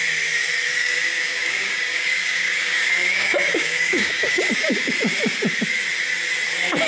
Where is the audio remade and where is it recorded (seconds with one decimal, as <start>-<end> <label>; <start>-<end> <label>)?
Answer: 0.0-0.8 recorded; 0.8-4.9 remade; 4.9-6.9 recorded